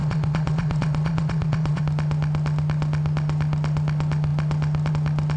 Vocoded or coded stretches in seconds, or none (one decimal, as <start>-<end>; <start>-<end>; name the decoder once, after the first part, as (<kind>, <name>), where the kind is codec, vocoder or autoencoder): 0.0-1.8 (vocoder, Vocos)